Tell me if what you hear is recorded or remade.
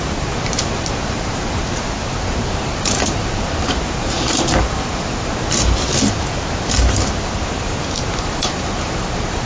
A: remade